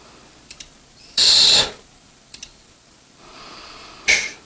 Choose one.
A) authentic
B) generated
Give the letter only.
B